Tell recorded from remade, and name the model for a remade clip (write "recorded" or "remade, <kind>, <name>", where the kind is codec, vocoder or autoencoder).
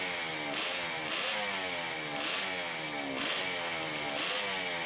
recorded